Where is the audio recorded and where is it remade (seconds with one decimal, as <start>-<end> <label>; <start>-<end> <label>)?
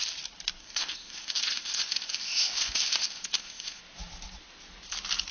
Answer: 0.0-0.6 recorded; 0.6-3.8 remade; 3.8-5.3 recorded